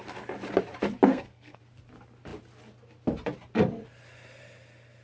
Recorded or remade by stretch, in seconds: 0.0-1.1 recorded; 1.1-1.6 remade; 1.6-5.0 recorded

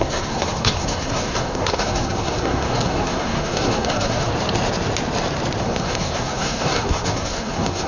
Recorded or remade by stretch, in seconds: 0.0-4.3 remade; 4.3-5.6 recorded; 5.6-7.9 remade

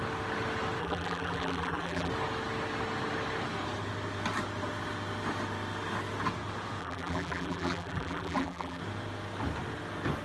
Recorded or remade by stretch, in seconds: 0.0-0.8 recorded; 0.8-2.1 remade; 2.1-6.8 recorded; 6.8-8.8 remade; 8.8-10.2 recorded

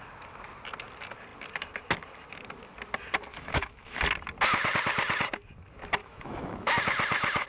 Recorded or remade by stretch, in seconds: 0.0-3.3 recorded; 3.3-4.0 remade; 4.0-6.0 recorded; 6.0-6.8 remade; 6.8-7.5 recorded

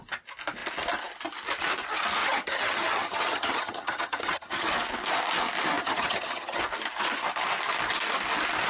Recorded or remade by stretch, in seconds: 0.0-2.2 recorded; 2.2-4.7 remade; 4.7-5.8 recorded; 5.8-6.6 remade; 6.6-8.7 recorded